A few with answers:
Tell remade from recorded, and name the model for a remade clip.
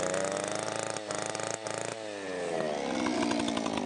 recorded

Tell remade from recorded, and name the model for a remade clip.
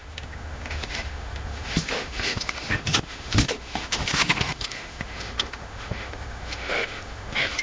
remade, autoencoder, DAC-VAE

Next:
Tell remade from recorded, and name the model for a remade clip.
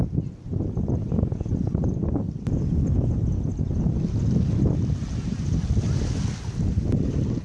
recorded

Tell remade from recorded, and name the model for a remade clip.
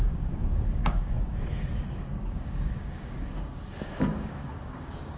remade, codec, DAC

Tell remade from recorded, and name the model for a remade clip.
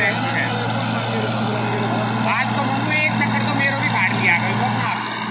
recorded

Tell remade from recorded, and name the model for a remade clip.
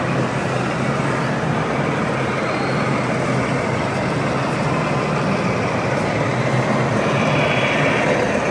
recorded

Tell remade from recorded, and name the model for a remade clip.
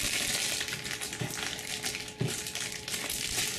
recorded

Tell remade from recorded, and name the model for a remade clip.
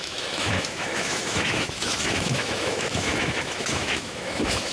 remade, autoencoder, DAC-VAE